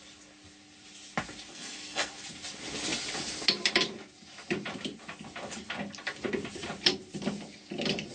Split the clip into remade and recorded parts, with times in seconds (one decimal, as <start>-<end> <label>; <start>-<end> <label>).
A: 0.0-1.5 recorded; 1.5-2.1 remade; 2.1-8.1 recorded